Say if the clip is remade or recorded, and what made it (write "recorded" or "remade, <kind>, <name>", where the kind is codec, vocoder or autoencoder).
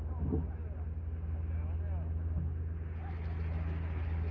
recorded